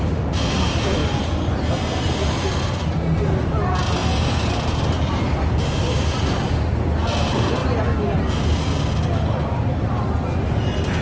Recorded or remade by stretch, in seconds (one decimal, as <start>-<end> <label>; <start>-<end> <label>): 0.0-11.0 recorded